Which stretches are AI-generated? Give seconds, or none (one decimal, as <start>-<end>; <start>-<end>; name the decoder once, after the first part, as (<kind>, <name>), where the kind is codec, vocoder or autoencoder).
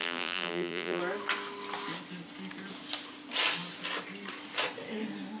0.0-1.0 (vocoder, BigVGAN v2)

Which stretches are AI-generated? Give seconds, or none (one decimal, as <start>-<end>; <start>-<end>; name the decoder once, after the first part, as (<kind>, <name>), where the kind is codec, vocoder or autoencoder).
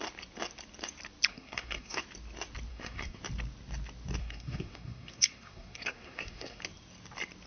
1.3-2.0 (codec, SNAC); 2.7-3.2; 4.2-6.6